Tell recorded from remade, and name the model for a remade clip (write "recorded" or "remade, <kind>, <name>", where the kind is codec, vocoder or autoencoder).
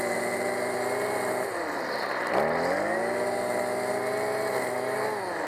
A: recorded